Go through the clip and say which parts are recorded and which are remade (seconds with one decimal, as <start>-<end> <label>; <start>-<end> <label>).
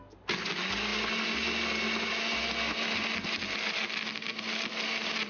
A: 0.0-5.3 recorded